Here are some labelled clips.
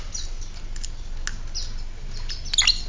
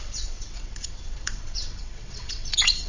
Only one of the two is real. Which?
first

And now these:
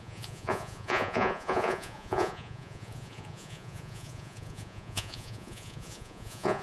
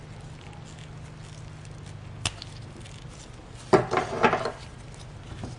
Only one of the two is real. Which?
second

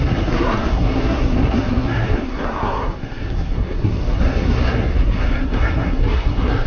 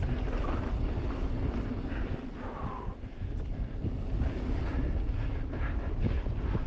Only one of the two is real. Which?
second